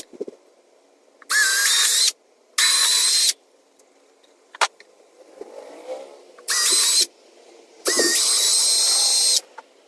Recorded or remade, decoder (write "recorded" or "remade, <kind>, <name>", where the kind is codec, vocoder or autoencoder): recorded